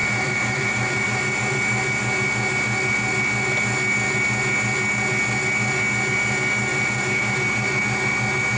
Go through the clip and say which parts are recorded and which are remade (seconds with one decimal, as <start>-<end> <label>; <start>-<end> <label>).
0.0-1.4 remade; 1.4-6.7 recorded; 6.7-7.8 remade; 7.8-8.6 recorded